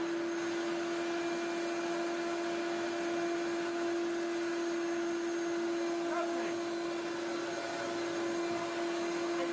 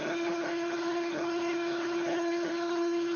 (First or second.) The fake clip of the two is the second